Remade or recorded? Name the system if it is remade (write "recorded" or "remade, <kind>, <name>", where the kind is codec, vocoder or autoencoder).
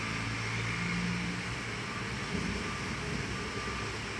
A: recorded